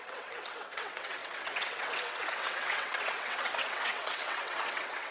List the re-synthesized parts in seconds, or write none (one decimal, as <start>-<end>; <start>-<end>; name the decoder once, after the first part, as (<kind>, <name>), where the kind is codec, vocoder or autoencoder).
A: 0.0-5.1 (vocoder, WaveNeXt)